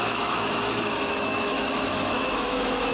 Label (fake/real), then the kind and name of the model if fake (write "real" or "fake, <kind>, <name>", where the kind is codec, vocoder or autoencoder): fake, autoencoder, DAC-VAE